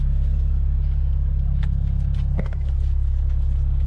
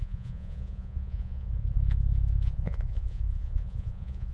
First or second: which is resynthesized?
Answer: second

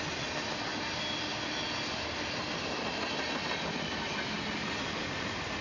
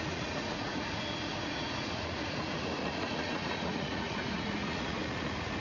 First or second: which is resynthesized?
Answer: second